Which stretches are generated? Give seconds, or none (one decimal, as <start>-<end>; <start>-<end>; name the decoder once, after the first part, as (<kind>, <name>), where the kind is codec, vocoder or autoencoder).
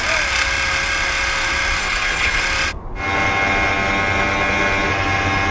1.8-2.4 (codec, HILCodec)